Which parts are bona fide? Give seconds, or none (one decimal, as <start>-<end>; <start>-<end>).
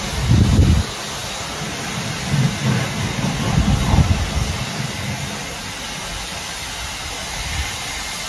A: 0.0-8.3